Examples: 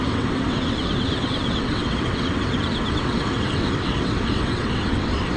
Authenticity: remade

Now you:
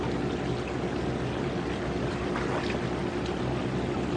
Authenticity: recorded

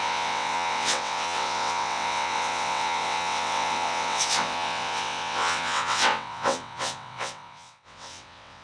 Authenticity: remade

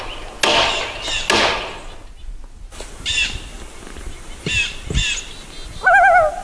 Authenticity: recorded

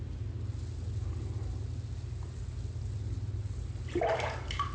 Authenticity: recorded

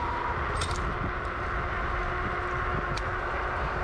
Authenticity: recorded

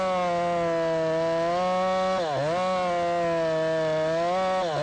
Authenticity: recorded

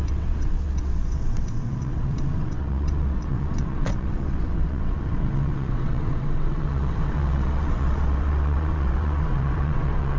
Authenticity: remade